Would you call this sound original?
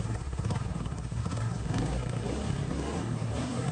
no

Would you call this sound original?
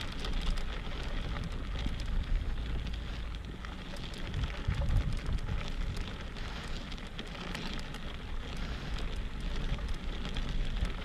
yes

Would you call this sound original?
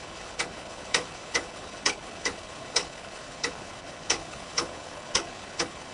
no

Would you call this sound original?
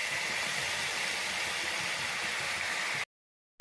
yes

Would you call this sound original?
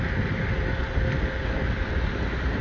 yes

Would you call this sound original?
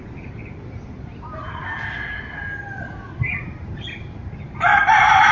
yes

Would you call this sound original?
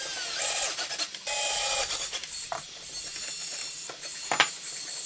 yes